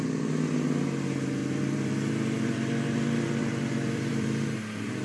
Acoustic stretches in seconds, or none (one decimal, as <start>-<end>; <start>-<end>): 0.0-1.4; 4.4-5.0